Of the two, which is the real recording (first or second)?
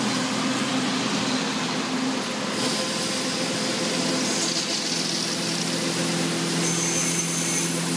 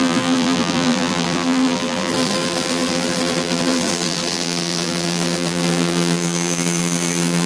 first